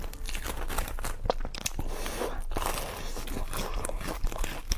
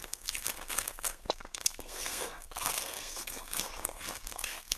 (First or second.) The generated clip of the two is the second